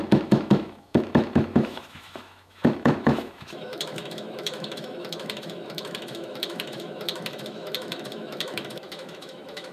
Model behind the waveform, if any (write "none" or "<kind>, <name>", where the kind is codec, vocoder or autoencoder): autoencoder, DAC-VAE